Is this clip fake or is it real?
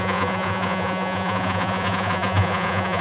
fake